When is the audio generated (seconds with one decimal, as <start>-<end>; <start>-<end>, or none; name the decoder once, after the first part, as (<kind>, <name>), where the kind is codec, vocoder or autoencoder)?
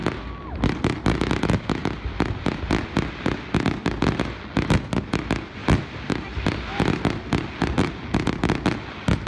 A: 5.6-6.1 (vocoder, BigVGAN v2); 6.7-7.9